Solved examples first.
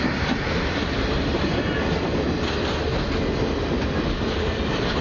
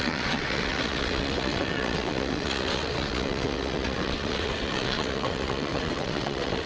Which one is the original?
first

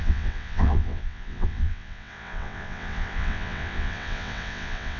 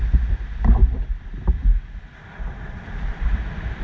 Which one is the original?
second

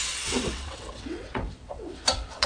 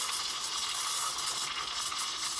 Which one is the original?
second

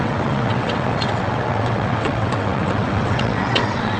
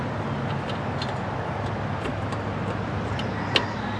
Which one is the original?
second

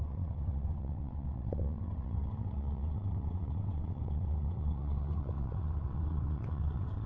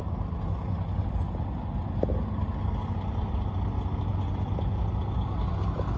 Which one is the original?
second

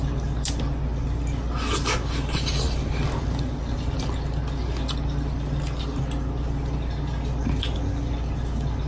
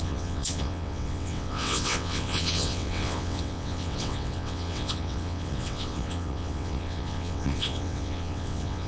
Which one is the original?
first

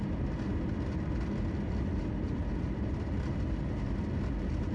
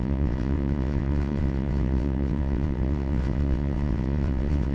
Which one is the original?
first